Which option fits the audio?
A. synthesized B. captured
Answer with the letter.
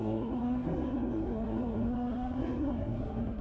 A